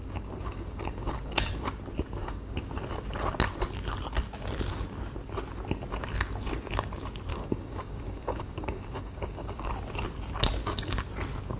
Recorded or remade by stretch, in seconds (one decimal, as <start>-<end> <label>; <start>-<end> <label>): 0.0-1.5 remade; 1.5-2.2 recorded; 2.2-2.7 remade; 2.7-7.3 recorded; 7.3-9.7 remade; 9.7-11.6 recorded